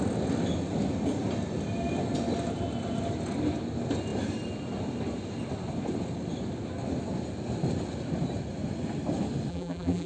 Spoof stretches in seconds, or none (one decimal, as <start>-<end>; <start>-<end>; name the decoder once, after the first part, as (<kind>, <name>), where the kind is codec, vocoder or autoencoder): 9.5-10.1 (vocoder, BigVGAN v2)